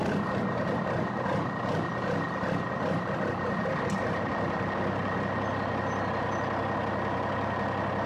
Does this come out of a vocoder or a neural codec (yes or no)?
no